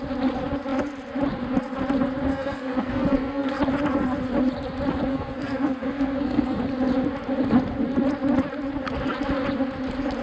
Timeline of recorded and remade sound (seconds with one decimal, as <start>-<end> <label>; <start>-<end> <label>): 0.0-2.3 recorded; 2.3-3.5 remade; 3.5-5.1 recorded; 5.1-6.6 remade; 6.6-10.2 recorded